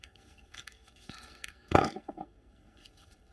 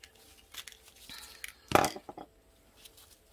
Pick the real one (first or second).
second